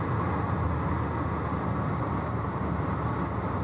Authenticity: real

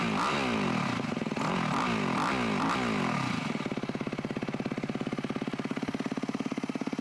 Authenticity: real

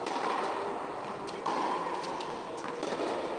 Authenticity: real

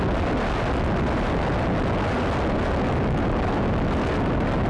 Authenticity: real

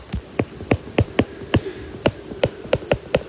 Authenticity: real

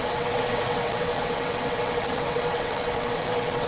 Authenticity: fake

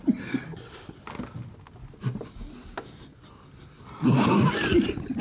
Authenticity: real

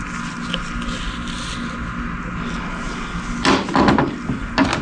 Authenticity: real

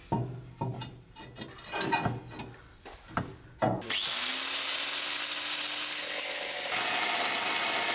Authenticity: real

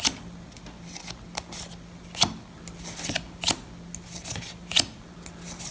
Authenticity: real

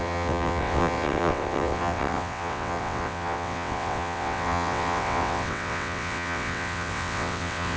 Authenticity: fake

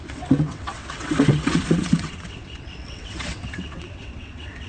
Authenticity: fake